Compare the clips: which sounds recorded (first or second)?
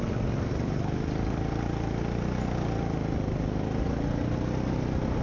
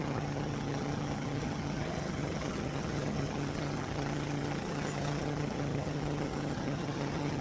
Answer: first